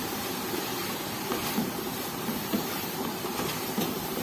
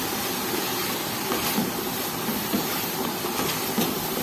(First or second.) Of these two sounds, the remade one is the first